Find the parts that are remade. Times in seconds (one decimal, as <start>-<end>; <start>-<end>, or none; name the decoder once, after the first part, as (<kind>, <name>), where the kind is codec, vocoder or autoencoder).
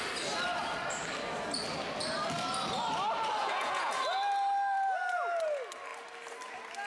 3.4-4.0 (vocoder, Vocos)